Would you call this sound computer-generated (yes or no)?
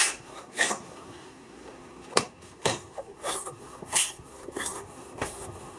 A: yes